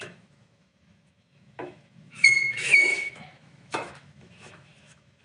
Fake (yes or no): yes